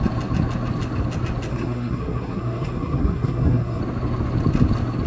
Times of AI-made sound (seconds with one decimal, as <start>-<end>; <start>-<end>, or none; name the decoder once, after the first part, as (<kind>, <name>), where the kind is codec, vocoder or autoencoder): 1.5-3.8 (codec, SNAC)